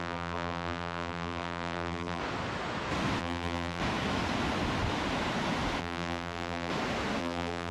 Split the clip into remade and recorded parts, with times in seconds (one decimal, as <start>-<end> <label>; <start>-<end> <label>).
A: 0.0-2.2 remade; 2.2-3.2 recorded; 3.2-3.8 remade; 3.8-5.8 recorded; 5.8-6.7 remade; 6.7-7.2 recorded; 7.2-7.7 remade